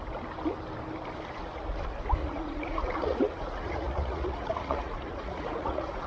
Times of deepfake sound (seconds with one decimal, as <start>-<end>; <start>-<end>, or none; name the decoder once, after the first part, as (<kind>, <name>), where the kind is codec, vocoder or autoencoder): 2.2-6.1 (vocoder, Vocos)